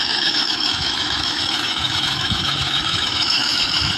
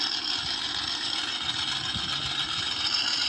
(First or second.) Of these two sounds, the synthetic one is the first